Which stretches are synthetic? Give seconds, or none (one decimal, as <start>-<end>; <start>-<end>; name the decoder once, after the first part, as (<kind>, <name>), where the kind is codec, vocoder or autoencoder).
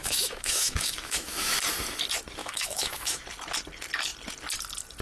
0.0-1.6 (autoencoder, DAC-VAE); 2.4-3.2